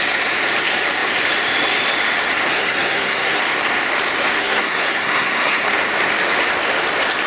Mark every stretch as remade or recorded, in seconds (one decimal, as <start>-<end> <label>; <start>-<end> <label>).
0.0-2.5 recorded; 2.5-3.4 remade; 3.4-4.4 recorded; 4.4-5.6 remade; 5.6-7.3 recorded

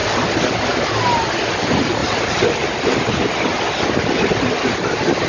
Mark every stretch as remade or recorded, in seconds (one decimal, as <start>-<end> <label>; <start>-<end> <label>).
0.0-5.3 recorded